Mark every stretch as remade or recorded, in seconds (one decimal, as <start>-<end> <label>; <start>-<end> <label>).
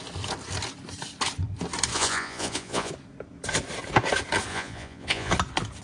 0.0-1.9 recorded; 1.9-2.9 remade; 2.9-4.5 recorded; 4.5-5.3 remade; 5.3-5.8 recorded